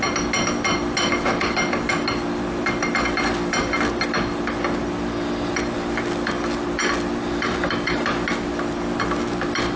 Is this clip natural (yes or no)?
yes